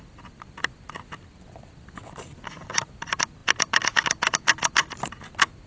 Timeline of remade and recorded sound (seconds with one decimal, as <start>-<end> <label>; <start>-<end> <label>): 0.0-5.7 recorded